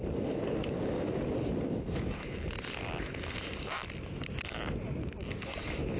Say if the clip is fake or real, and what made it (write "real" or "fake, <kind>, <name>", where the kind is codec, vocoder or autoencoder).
real